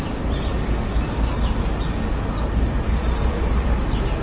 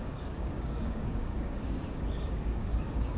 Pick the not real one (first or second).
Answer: second